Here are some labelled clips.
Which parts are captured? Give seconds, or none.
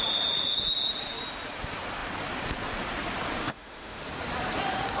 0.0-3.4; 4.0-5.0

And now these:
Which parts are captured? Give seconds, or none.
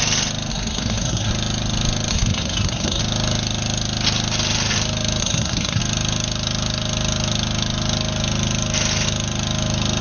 0.0-0.5; 1.3-2.1; 3.0-5.2; 5.8-10.0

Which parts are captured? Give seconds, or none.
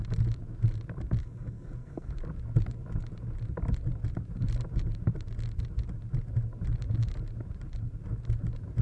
0.0-1.2; 2.1-8.8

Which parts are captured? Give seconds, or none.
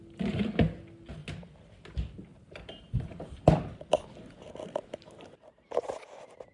0.0-2.3; 3.1-6.5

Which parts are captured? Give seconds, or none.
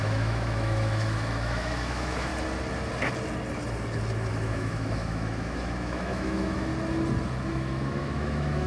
2.3-4.3; 6.7-7.5